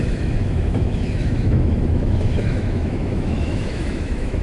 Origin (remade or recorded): remade